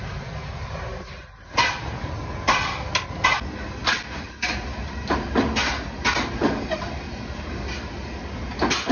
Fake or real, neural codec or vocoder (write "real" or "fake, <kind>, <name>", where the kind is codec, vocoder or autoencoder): real